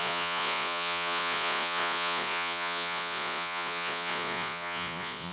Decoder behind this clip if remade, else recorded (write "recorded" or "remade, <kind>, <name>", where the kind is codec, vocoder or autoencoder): remade, vocoder, Vocos